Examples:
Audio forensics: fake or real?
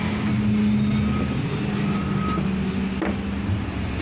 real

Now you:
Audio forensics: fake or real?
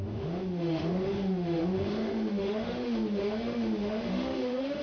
fake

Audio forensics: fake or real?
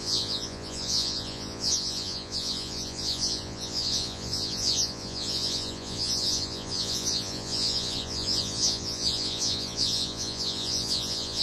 fake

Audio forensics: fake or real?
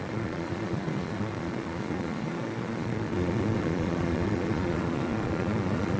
fake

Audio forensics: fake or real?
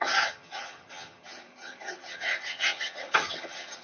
fake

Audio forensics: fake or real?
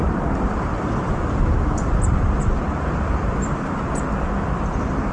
real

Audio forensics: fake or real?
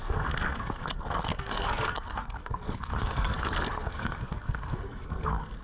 fake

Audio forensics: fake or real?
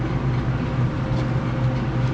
real